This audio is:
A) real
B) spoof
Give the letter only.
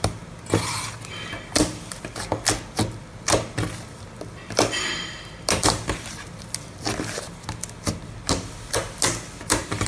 A